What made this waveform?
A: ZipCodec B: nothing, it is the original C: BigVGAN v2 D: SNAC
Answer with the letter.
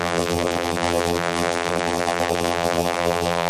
C